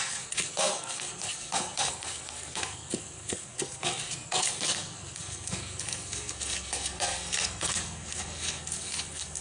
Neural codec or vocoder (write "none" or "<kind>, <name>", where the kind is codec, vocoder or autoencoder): codec, SNAC